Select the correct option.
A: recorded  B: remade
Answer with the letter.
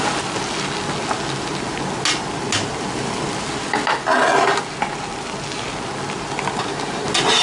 A